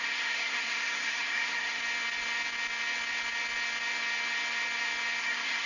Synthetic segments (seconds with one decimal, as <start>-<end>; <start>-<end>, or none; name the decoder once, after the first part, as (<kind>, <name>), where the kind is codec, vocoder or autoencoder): 0.0-1.8 (codec, SNAC); 5.2-5.7